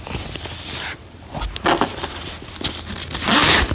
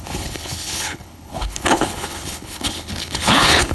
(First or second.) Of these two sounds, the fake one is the second